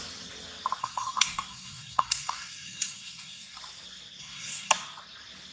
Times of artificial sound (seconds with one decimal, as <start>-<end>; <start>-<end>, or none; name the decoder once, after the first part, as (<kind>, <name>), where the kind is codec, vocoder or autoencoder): 0.8-3.6 (codec, SNAC); 4.2-4.7